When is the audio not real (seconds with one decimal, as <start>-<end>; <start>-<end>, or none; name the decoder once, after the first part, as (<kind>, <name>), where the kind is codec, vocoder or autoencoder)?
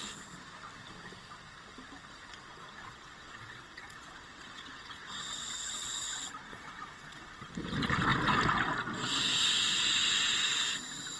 2.5-7.5 (vocoder, WaveNeXt)